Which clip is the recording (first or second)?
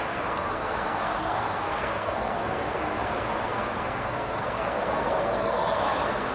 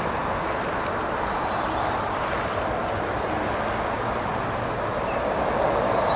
second